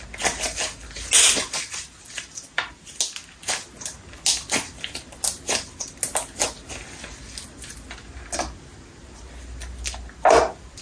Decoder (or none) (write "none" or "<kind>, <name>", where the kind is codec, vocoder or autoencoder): none